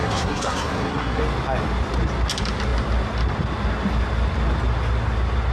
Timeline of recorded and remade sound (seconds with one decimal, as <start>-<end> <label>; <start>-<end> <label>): 0.0-1.2 remade; 1.2-5.5 recorded